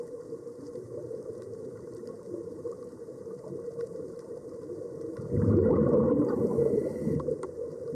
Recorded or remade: remade